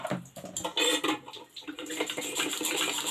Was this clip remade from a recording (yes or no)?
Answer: yes